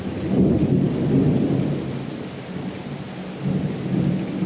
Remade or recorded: recorded